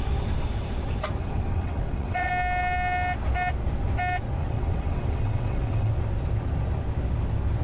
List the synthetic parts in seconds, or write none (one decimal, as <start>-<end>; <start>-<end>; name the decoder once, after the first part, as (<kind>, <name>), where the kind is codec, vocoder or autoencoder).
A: 1.2-2.3 (vocoder, WaveNeXt); 4.4-5.9